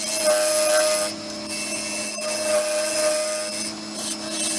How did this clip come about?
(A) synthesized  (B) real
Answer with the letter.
B